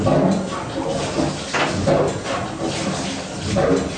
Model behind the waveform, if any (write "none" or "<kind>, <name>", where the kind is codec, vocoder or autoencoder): none